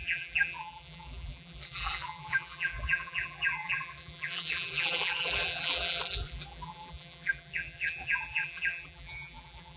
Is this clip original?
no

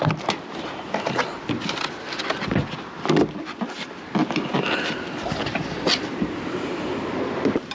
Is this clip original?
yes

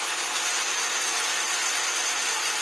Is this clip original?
yes